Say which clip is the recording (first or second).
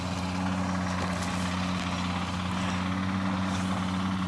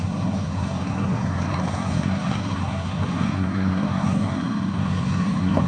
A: first